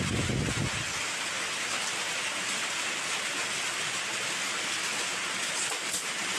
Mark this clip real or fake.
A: real